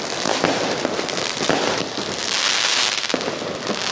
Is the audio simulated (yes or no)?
no